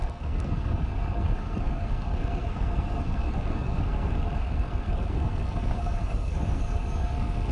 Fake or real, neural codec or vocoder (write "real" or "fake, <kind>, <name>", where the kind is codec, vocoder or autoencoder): fake, codec, SNAC